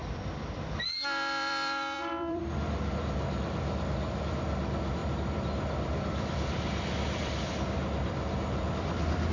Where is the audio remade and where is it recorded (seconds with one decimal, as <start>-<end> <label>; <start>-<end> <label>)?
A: 0.0-2.4 remade; 2.4-5.0 recorded; 5.0-9.3 remade